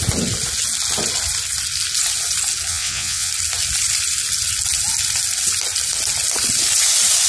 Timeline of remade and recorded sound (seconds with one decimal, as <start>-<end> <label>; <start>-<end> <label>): 0.0-2.7 recorded; 2.7-3.3 remade; 3.3-7.3 recorded